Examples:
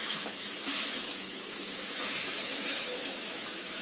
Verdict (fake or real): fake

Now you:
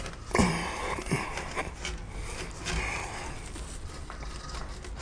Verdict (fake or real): real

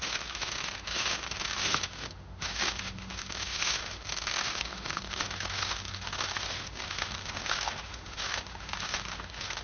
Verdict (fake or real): fake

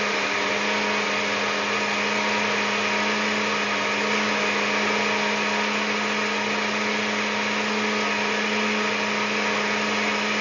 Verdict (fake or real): real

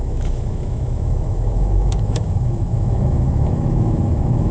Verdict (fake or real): fake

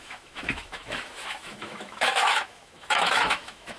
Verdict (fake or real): fake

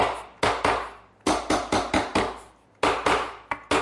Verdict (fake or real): real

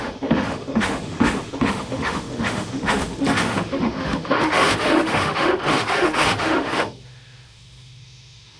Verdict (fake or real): fake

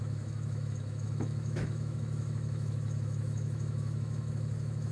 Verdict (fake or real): fake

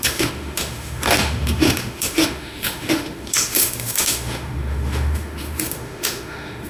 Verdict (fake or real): fake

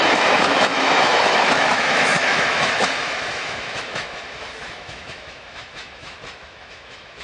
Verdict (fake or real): fake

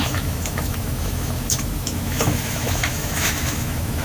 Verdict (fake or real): fake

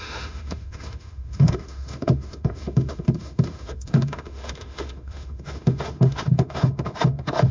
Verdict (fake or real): fake